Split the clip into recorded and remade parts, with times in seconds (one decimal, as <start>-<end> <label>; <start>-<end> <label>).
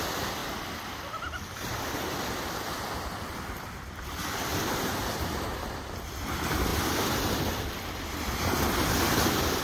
0.0-4.5 recorded; 4.5-5.4 remade; 5.4-9.6 recorded